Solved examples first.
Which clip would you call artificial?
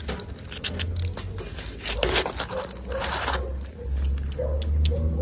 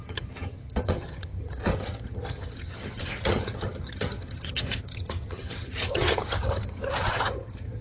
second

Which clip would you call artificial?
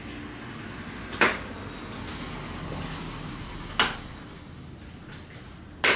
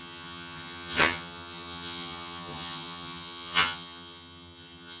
second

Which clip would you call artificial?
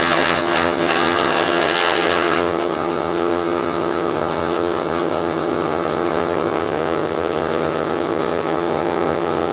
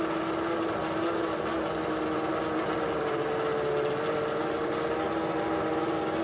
first